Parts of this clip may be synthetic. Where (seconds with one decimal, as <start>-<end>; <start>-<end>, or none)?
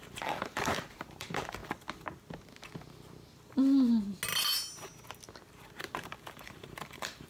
0.0-1.6; 5.7-7.3